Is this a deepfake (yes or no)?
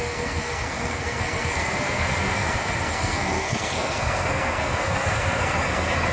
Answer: yes